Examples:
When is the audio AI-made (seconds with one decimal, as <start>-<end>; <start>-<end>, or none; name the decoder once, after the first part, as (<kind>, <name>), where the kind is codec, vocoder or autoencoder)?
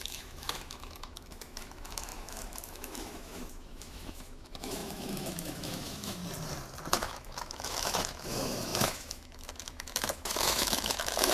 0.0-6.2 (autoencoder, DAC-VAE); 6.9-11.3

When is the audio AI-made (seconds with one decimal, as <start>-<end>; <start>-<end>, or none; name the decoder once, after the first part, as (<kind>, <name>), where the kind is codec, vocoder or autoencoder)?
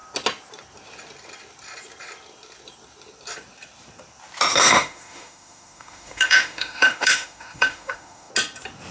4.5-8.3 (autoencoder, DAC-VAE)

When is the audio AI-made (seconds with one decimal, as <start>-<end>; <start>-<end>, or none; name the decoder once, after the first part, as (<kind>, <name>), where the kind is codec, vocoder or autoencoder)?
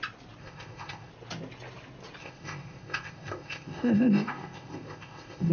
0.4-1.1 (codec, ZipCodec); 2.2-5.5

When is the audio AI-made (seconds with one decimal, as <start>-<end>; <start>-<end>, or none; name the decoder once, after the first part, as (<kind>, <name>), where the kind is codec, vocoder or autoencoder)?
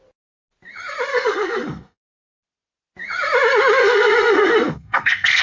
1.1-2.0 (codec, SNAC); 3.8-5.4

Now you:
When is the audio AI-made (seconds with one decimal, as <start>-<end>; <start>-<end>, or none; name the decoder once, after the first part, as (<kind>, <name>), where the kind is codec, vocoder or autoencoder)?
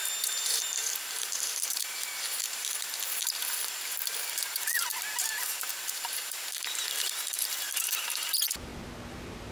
0.0-8.7 (vocoder, BigVGAN v2)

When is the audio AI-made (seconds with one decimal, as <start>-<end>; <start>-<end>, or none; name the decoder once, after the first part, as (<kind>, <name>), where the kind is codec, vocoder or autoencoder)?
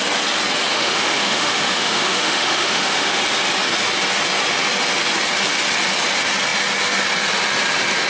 0.7-3.2 (autoencoder, DAC-VAE)